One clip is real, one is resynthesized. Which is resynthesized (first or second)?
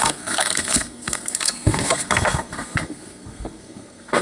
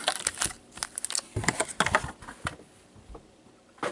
first